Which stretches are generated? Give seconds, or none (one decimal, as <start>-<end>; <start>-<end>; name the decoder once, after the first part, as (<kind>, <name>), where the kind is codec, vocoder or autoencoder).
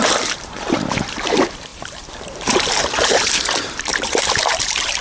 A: 0.0-5.0 (vocoder, BigVGAN v2)